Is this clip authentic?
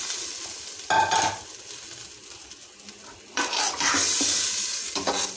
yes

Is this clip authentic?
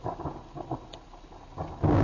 yes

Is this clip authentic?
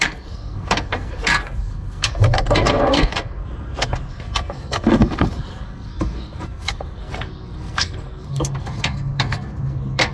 no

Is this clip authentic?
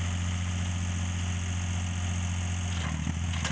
yes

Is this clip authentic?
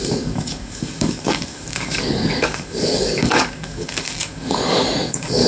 no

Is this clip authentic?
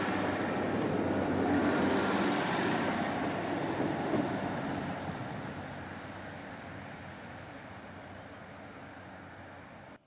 yes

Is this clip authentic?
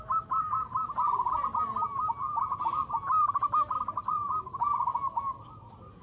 yes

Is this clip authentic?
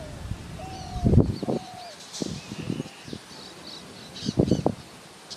yes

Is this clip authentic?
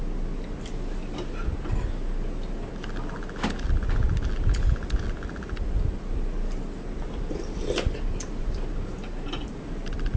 yes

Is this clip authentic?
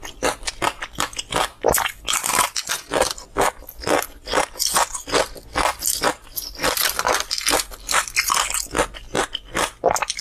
yes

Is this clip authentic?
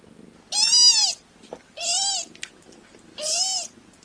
yes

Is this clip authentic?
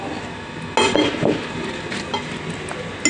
yes